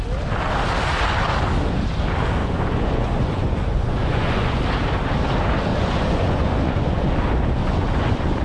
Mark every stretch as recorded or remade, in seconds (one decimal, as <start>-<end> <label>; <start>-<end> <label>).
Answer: 0.0-2.4 recorded; 2.4-4.6 remade; 4.6-5.7 recorded; 5.7-7.1 remade; 7.1-7.6 recorded; 7.6-8.4 remade